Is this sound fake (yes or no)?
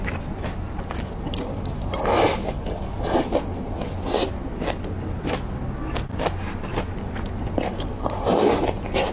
no